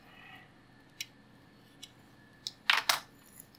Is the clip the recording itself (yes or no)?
yes